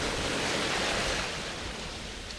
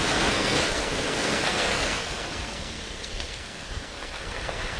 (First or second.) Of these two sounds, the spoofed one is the second